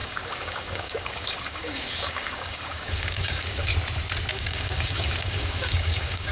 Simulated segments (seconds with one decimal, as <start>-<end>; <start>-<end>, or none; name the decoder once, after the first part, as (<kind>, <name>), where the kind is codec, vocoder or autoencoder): 0.0-3.7 (codec, DAC); 4.3-6.3